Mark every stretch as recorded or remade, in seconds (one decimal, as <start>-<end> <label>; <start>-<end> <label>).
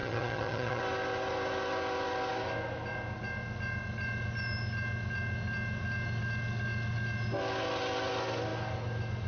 0.0-0.8 remade; 0.8-9.3 recorded